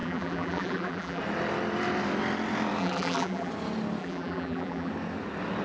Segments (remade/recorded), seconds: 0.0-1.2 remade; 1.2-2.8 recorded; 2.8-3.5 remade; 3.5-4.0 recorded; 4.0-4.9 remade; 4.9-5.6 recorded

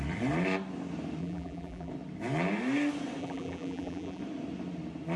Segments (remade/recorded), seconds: 0.0-1.2 recorded; 1.2-1.9 remade; 1.9-3.2 recorded; 3.2-4.2 remade; 4.2-5.2 recorded

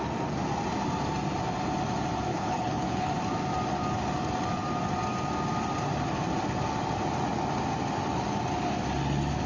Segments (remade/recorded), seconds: 0.0-2.3 recorded; 2.3-3.1 remade; 3.1-9.5 recorded

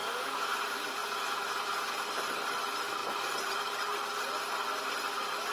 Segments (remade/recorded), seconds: 0.0-0.6 remade; 0.6-1.0 recorded; 1.0-1.9 remade; 1.9-5.5 recorded

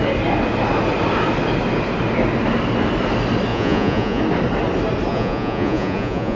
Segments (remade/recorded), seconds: 0.0-3.5 recorded; 3.5-4.2 remade; 4.2-5.1 recorded; 5.1-6.4 remade

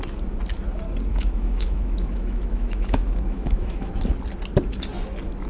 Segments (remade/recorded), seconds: 0.0-1.1 recorded; 1.1-3.9 remade; 3.9-5.5 recorded

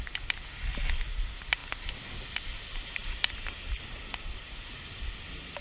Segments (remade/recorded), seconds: 0.0-5.6 recorded